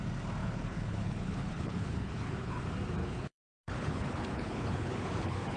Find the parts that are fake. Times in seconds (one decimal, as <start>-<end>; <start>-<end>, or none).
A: 0.4-2.6; 3.0-5.6

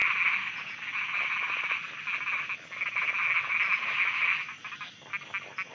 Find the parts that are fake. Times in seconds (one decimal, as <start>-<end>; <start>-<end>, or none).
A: none